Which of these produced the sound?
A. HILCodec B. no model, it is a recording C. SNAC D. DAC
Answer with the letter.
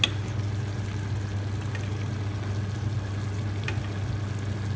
B